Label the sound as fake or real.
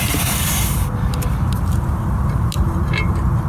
fake